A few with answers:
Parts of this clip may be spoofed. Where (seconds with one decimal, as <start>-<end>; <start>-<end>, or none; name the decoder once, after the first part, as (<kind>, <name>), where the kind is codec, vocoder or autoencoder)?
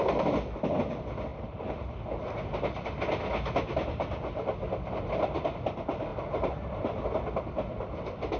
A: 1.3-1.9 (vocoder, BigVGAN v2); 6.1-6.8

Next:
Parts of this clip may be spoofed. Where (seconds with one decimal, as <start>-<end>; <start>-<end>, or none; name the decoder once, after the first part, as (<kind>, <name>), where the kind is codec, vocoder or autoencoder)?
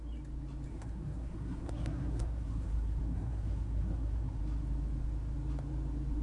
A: 0.7-4.4 (codec, SNAC)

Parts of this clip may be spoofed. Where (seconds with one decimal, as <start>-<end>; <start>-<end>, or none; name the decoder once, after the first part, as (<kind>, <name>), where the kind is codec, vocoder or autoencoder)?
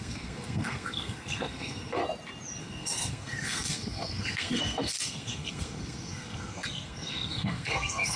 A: 0.0-2.0 (codec, SNAC); 2.6-8.2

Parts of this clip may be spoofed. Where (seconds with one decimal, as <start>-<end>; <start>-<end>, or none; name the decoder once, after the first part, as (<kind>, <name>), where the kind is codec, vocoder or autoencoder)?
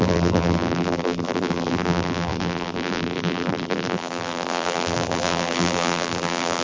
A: 0.0-6.6 (vocoder, BigVGAN v2)